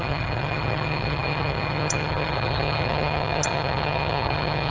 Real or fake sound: fake